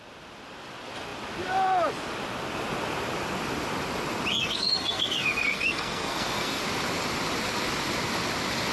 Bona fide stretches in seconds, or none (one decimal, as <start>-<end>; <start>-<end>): 0.0-4.3; 6.6-8.7